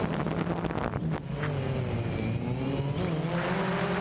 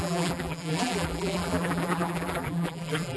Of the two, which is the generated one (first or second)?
second